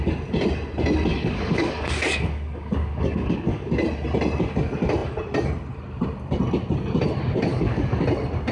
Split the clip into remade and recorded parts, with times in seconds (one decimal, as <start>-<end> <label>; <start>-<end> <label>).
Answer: 0.0-1.1 recorded; 1.1-3.7 remade; 3.7-7.5 recorded; 7.5-8.0 remade; 8.0-8.5 recorded